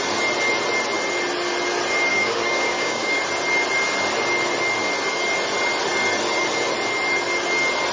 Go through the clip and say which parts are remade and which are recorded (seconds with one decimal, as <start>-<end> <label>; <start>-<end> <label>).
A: 0.0-2.1 recorded; 2.1-3.2 remade; 3.2-7.9 recorded